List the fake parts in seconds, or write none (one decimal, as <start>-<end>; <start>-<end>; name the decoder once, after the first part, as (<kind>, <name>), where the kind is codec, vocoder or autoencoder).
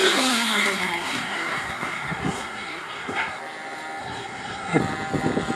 0.0-3.4 (codec, SNAC); 4.0-4.8